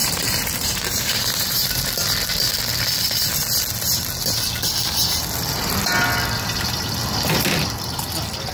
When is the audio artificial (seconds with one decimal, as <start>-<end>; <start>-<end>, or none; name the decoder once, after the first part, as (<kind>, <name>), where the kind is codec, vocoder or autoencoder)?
0.0-1.9 (vocoder, BigVGAN v2)